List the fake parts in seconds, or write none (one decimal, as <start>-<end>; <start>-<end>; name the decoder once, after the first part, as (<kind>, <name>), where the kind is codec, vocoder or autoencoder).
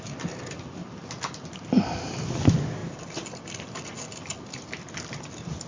none